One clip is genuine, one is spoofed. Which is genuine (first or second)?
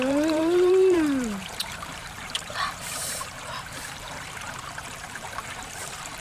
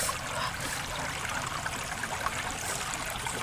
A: second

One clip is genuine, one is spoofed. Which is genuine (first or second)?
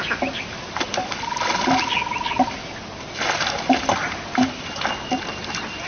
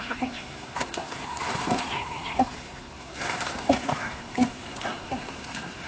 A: first